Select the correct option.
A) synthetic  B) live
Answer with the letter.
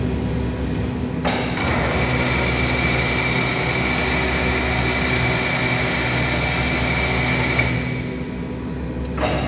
B